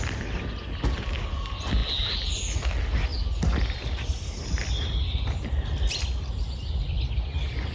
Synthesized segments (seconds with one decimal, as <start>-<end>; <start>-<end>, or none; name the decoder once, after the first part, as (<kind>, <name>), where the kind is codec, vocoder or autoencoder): none